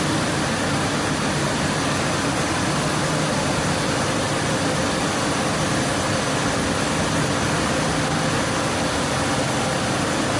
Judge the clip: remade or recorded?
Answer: recorded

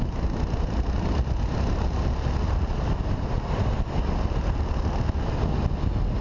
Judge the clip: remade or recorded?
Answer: recorded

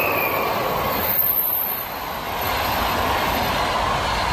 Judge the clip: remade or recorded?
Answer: recorded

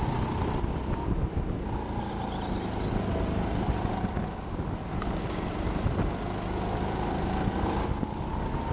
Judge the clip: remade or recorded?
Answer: recorded